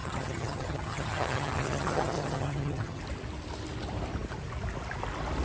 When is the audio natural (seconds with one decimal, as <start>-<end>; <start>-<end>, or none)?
3.0-5.4